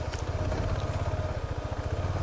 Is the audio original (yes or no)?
yes